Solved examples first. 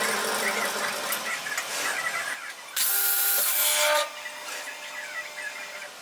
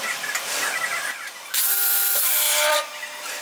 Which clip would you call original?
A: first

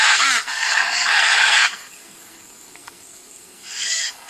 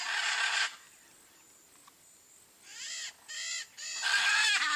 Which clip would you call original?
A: second